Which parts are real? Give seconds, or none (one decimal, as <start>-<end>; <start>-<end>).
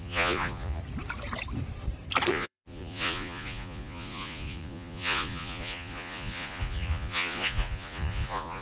0.8-2.3